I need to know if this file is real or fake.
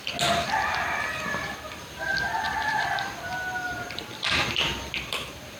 real